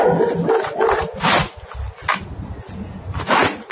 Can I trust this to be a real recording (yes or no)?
yes